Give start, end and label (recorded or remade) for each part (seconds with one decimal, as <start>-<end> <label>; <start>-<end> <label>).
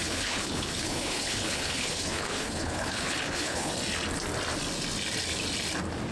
0.0-3.7 remade; 3.7-6.1 recorded